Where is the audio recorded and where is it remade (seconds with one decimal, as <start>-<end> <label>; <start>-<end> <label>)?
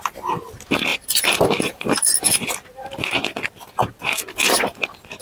0.0-5.2 recorded